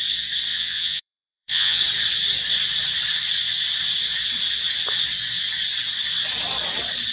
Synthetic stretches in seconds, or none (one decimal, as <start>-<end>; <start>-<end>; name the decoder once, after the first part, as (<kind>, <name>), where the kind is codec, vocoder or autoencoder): 0.5-1.8 (vocoder, Vocos)